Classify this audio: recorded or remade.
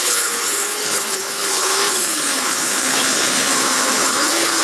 remade